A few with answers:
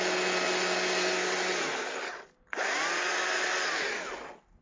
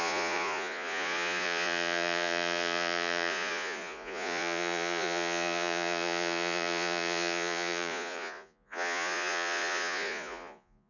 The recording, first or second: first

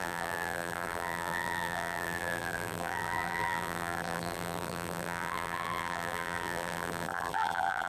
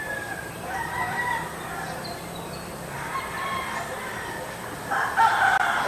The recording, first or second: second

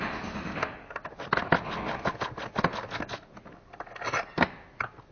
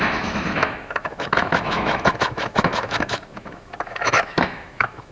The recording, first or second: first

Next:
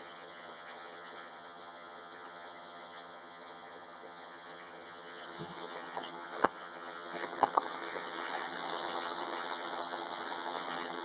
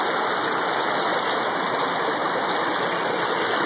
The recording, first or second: second